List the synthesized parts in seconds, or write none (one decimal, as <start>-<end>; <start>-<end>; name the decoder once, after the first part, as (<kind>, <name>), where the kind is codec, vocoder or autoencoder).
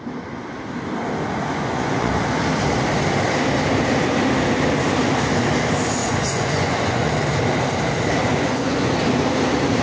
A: 1.5-2.1 (vocoder, Vocos); 6.0-7.1; 8.2-8.9